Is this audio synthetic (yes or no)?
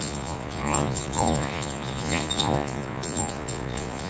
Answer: yes